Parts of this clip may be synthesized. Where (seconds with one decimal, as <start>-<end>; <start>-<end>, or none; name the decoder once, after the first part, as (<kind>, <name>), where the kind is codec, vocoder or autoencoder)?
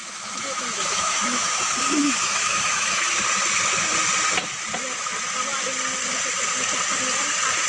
0.0-3.1 (autoencoder, DAC-VAE)